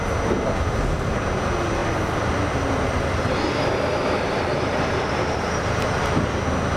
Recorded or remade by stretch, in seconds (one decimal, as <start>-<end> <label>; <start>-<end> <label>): 0.0-1.8 recorded; 1.8-5.8 remade; 5.8-6.8 recorded